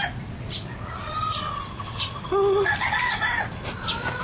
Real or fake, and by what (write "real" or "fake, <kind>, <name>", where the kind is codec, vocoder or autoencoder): real